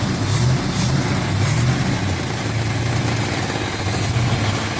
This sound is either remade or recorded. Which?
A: recorded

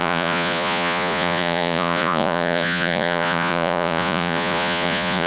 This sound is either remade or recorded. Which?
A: remade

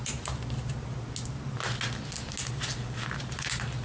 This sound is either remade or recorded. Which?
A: recorded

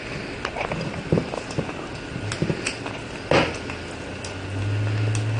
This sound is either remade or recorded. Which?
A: recorded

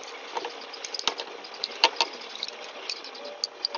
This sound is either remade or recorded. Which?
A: recorded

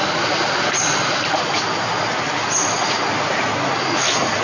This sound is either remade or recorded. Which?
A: recorded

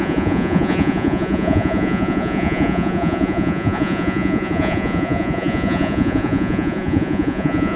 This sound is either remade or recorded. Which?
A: remade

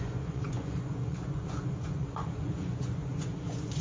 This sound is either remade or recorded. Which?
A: remade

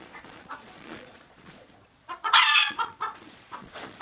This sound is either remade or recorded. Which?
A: remade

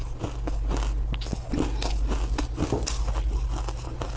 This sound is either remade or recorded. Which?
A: recorded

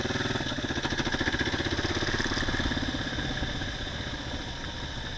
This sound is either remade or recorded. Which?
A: recorded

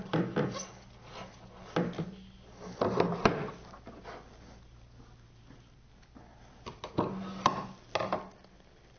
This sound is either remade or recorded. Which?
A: recorded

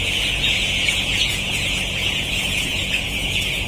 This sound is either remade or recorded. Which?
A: remade